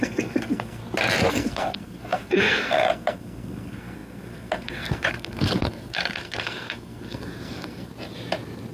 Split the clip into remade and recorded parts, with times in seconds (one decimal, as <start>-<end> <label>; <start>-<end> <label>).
0.0-0.8 remade; 0.8-1.3 recorded; 1.3-7.9 remade; 7.9-8.7 recorded